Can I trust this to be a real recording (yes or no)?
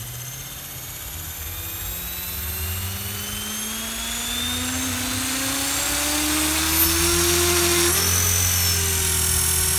yes